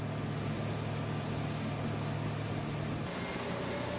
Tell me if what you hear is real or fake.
real